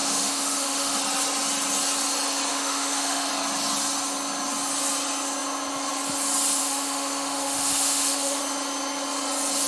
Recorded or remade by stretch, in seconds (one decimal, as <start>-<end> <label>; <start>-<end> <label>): 0.0-1.0 remade; 1.0-2.5 recorded; 2.5-3.3 remade; 3.3-6.6 recorded; 6.6-8.4 remade; 8.4-9.7 recorded